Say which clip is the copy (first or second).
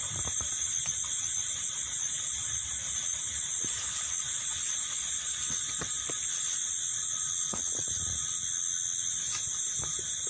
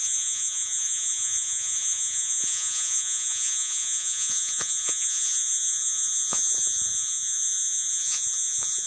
second